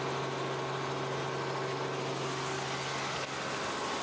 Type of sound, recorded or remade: recorded